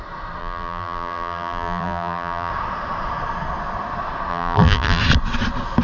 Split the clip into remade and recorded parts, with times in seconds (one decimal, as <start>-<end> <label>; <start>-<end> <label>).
0.0-0.4 recorded; 0.4-2.5 remade; 2.5-4.3 recorded; 4.3-5.0 remade; 5.0-5.8 recorded